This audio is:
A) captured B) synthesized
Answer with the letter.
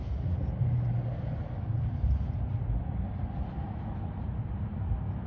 A